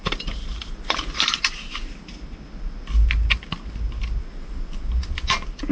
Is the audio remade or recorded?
recorded